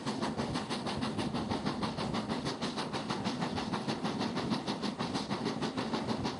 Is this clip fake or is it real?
real